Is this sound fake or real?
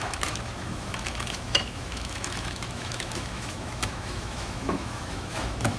fake